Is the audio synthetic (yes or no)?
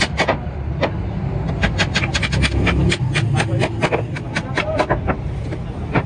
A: no